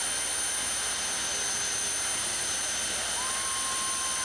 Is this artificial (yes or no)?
no